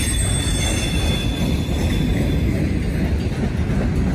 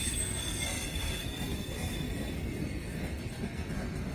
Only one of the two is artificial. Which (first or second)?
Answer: second